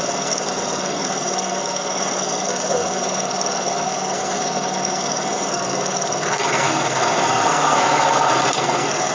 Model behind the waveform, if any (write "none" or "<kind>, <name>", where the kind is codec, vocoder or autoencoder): codec, SNAC